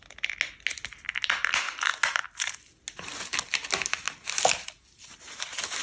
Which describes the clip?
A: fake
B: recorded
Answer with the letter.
B